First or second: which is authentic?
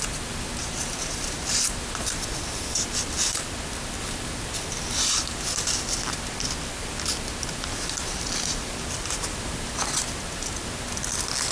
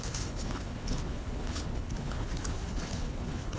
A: first